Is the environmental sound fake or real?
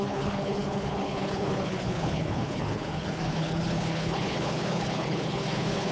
fake